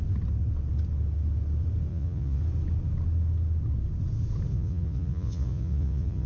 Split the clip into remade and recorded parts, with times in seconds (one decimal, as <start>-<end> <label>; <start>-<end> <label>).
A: 0.0-1.9 recorded; 1.9-2.4 remade; 2.4-4.5 recorded; 4.5-6.3 remade